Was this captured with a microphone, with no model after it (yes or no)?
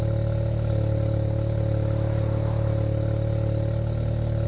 yes